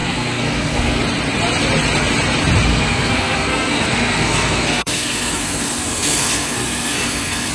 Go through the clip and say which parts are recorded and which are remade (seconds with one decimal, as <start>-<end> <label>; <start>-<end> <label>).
0.0-1.0 remade; 1.0-2.7 recorded; 2.7-7.5 remade